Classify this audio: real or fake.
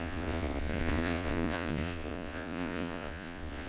fake